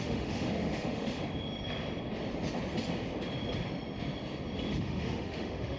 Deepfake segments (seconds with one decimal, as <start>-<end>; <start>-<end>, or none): 0.0-1.2; 4.7-5.8